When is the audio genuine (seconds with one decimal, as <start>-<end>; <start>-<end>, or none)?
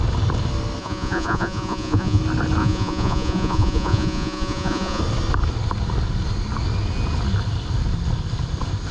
0.0-0.8; 2.2-2.6; 5.0-8.9